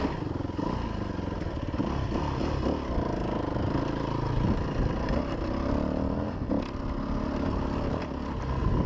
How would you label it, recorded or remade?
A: recorded